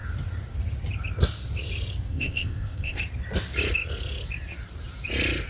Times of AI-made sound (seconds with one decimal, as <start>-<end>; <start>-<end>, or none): 2.1-3.0